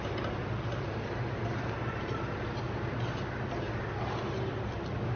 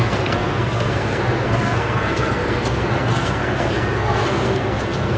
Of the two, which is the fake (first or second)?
second